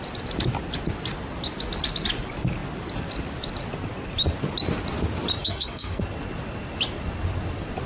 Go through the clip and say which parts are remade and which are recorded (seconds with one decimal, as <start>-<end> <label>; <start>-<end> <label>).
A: 0.0-5.4 recorded; 5.4-6.0 remade; 6.0-7.9 recorded